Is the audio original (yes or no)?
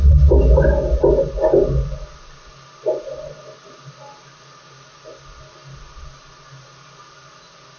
yes